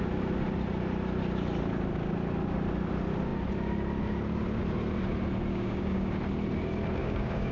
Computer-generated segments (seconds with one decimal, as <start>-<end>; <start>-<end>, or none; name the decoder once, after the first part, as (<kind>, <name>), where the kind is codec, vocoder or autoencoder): 5.5-6.1 (codec, DAC); 7.0-7.5